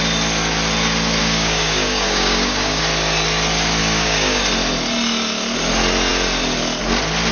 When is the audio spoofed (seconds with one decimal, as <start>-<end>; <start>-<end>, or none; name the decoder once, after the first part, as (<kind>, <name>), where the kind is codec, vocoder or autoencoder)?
1.2-2.8 (codec, DAC); 3.8-4.4

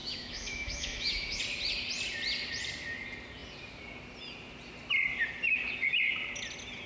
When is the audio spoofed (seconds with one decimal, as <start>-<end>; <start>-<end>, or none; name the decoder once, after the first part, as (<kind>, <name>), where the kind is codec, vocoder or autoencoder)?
0.0-1.4 (autoencoder, DAC-VAE)

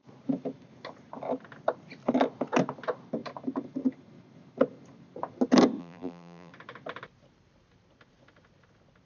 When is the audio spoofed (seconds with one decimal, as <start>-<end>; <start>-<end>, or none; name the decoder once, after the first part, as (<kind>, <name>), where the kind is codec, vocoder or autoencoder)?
5.8-6.5 (vocoder, BigVGAN v2)

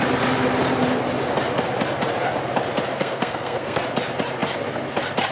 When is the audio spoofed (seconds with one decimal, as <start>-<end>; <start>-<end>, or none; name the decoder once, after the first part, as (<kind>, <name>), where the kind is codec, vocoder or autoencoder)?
3.0-3.8 (codec, SNAC)

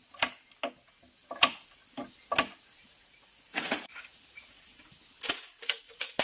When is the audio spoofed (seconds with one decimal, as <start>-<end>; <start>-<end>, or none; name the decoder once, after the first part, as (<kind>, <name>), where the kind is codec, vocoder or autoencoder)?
1.4-1.8 (vocoder, Vocos); 2.8-4.7; 5.3-6.2